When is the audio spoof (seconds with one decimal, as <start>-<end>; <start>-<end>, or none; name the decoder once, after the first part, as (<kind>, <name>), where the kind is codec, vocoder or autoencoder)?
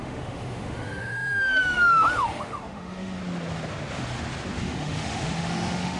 0.0-3.2 (autoencoder, DAC-VAE); 4.6-6.0